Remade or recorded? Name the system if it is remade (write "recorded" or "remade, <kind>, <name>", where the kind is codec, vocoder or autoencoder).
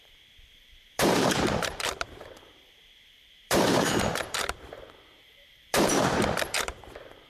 remade, vocoder, BigVGAN v2